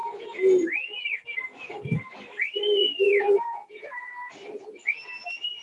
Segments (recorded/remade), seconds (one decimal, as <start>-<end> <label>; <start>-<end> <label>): 0.0-1.0 remade; 1.0-2.8 recorded; 2.8-4.1 remade; 4.1-5.6 recorded